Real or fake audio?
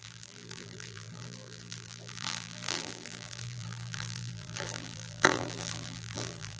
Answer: fake